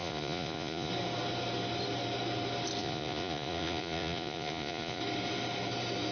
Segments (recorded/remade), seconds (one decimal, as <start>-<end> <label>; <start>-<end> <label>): 0.0-0.9 remade; 0.9-2.8 recorded; 2.8-5.0 remade; 5.0-6.1 recorded